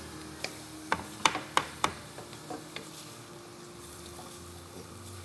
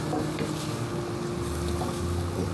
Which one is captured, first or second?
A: second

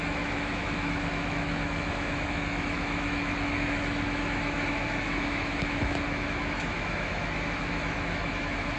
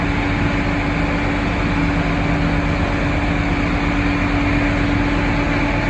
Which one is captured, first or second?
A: second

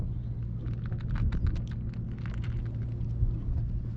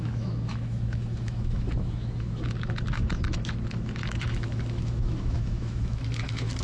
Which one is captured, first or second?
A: first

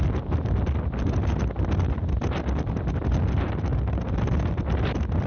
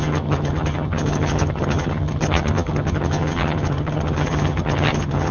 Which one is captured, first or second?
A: first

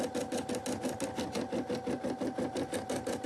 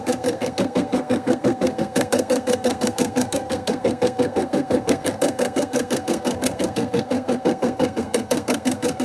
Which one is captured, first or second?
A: first